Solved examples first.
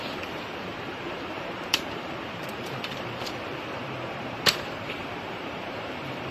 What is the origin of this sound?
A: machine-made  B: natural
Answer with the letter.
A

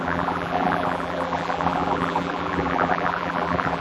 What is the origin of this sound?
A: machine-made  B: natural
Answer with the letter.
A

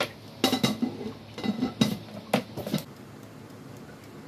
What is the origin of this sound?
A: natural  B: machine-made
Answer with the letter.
A